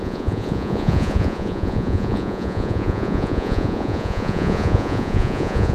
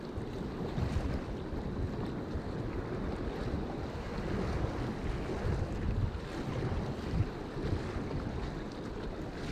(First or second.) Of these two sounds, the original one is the second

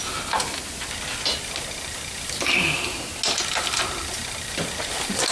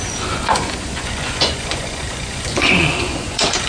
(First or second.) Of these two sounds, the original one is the first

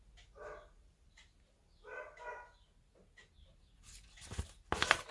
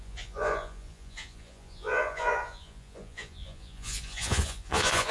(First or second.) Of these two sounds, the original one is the first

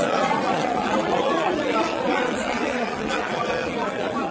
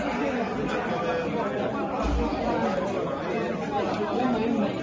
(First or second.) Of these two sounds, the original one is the second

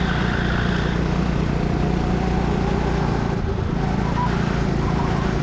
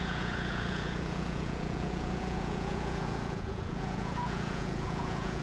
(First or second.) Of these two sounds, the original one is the first